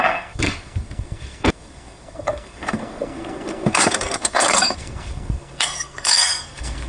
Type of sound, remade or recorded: remade